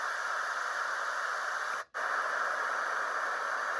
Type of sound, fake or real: real